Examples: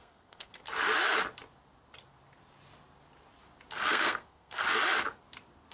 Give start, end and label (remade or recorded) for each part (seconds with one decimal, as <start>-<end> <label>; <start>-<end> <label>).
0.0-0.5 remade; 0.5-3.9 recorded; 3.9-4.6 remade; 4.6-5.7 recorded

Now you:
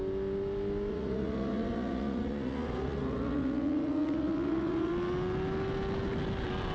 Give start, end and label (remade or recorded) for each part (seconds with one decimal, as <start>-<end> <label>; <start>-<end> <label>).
0.0-0.9 recorded; 0.9-4.9 remade; 4.9-6.7 recorded

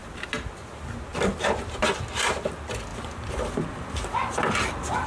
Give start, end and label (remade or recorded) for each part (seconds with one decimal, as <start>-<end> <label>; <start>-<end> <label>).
0.0-2.9 recorded; 2.9-5.1 remade

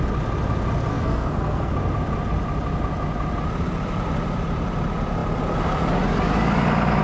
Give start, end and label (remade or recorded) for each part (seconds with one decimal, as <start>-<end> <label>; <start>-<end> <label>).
0.0-0.9 recorded; 0.9-1.7 remade; 1.7-7.0 recorded

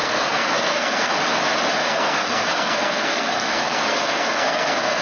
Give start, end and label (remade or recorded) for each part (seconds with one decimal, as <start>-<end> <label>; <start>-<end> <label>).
0.0-1.1 remade; 1.1-1.8 recorded; 1.8-5.0 remade